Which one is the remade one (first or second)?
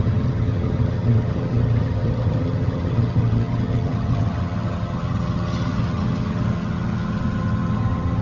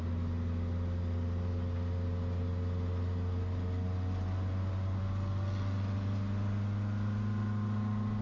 first